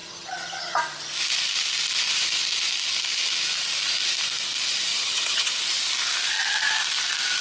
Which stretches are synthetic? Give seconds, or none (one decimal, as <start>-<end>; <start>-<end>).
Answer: 0.0-0.8; 4.9-5.6